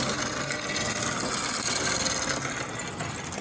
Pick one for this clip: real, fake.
real